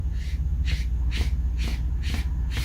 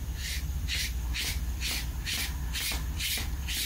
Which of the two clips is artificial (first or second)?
second